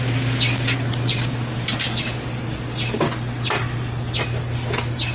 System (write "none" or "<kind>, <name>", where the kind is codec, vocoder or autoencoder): none